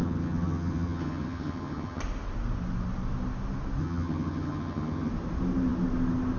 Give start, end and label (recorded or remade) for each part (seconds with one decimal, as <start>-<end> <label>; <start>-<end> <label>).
0.0-2.0 remade; 2.0-3.8 recorded; 3.8-5.1 remade; 5.1-6.4 recorded